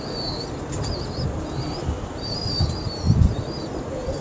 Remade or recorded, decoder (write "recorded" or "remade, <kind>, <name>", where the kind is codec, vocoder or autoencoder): recorded